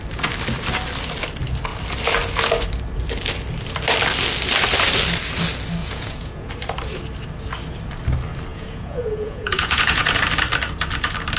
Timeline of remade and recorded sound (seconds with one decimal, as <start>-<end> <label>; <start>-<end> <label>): 0.0-5.8 recorded; 5.8-6.5 remade; 6.5-8.5 recorded; 8.5-10.2 remade; 10.2-11.4 recorded